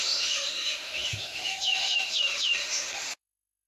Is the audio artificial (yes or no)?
yes